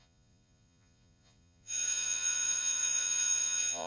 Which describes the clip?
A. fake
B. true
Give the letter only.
A